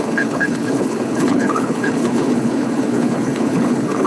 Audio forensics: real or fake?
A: fake